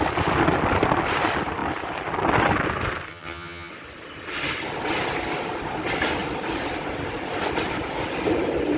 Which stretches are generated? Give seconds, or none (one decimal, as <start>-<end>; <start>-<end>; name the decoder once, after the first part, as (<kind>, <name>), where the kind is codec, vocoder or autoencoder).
3.1-3.7 (vocoder, HiFi-GAN)